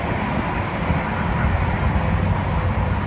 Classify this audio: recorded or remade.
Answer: recorded